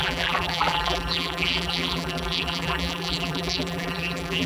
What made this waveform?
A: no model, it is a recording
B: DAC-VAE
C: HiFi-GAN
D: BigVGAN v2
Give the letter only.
D